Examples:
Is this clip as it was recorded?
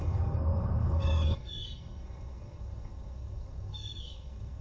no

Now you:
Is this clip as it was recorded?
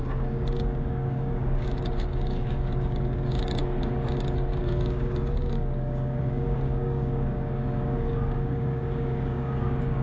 no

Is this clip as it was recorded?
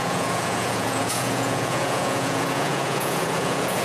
no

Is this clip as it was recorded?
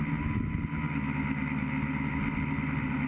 yes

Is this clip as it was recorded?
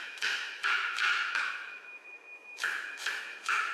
no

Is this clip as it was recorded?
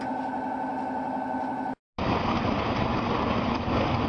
yes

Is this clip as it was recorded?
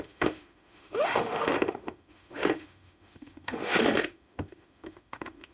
no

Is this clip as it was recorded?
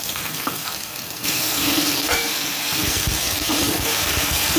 no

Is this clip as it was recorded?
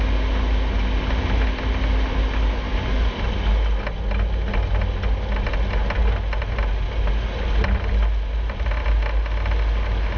yes